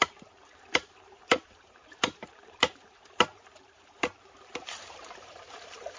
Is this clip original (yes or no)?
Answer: no